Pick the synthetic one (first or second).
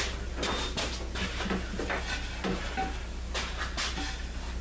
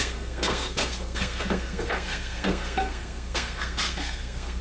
second